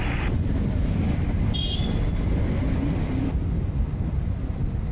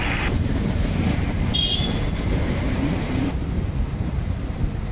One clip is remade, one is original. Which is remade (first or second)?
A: second